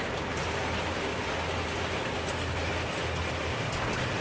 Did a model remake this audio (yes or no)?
no